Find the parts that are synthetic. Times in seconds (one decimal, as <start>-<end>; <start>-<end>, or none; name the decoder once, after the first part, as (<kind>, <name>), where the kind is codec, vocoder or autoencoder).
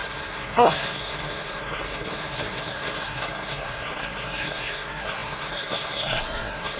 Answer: 0.0-6.8 (codec, SNAC)